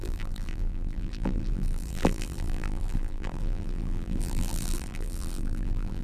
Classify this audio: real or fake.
fake